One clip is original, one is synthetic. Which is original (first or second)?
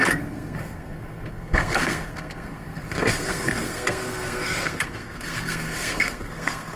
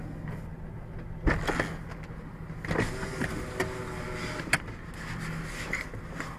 second